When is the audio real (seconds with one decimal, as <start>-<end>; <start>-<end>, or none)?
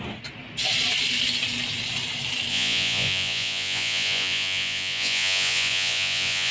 0.0-2.5